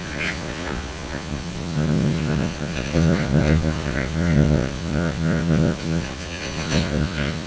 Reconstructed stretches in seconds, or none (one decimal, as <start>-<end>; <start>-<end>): 0.0-7.5

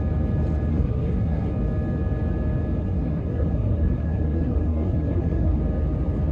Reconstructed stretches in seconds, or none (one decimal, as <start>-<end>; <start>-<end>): 0.7-1.5; 2.8-5.6

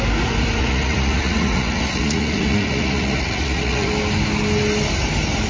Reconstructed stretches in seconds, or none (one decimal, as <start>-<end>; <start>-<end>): 0.6-3.9

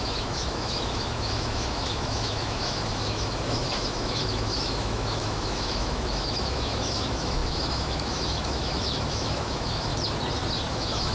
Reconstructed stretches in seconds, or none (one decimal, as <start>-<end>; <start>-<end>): 0.0-9.9; 10.7-11.1

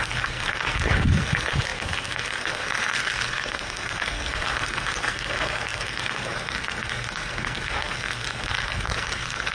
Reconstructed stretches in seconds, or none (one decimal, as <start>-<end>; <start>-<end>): 0.0-9.5

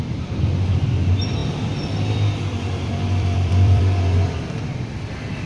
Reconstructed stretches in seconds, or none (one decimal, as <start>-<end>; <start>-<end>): 1.4-3.8

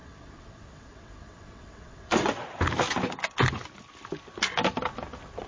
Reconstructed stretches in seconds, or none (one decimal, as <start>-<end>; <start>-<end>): 0.0-2.3

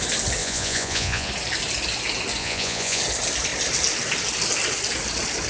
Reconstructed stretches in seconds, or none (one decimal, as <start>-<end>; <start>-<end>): 0.4-1.3; 2.4-3.0